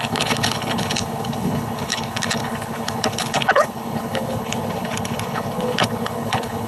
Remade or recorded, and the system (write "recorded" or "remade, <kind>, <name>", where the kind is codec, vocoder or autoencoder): remade, codec, HILCodec